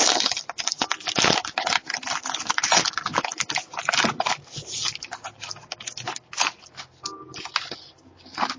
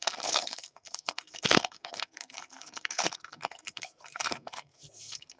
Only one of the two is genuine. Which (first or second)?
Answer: first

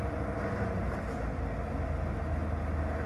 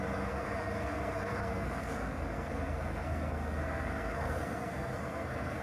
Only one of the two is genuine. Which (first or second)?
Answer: first